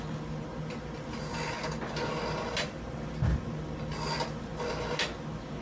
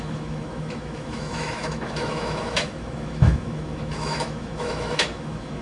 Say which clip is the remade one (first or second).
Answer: second